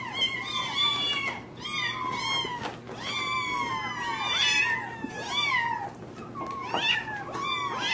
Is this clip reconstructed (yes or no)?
no